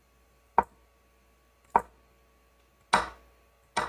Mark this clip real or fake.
real